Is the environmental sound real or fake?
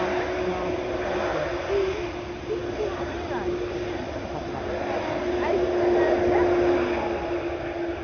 real